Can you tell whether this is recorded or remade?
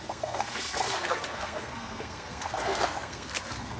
remade